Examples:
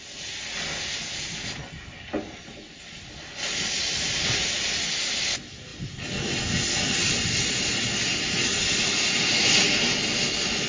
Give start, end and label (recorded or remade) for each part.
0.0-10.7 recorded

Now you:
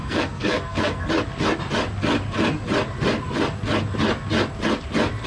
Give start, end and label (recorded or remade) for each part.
0.0-1.1 remade; 1.1-5.3 recorded

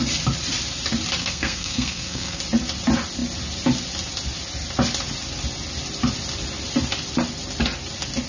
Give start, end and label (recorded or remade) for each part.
0.0-1.2 recorded; 1.2-2.4 remade; 2.4-8.3 recorded

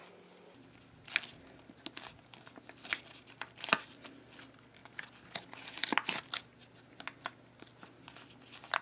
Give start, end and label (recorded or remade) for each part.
0.0-8.8 recorded

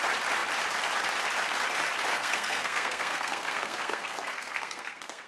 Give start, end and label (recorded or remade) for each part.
0.0-2.1 recorded; 2.1-5.3 remade

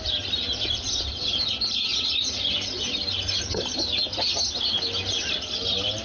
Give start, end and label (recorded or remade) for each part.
0.0-6.0 recorded

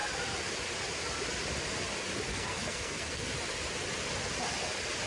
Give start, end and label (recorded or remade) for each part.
0.0-2.3 recorded; 2.3-3.3 remade; 3.3-5.1 recorded